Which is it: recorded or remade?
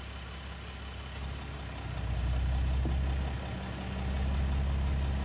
recorded